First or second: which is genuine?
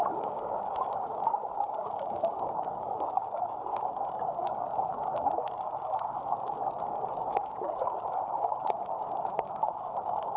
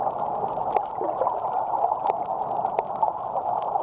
second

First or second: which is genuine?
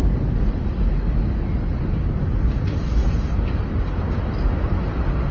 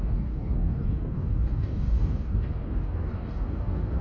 first